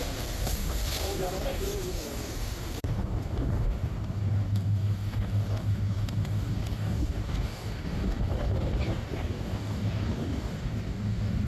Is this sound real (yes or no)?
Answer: no